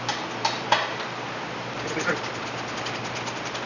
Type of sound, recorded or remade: recorded